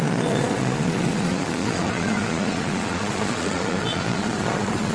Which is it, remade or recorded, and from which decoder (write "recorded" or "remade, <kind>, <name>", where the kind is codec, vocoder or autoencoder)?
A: remade, vocoder, Vocos